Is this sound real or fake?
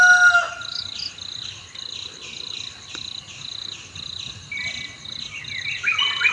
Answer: real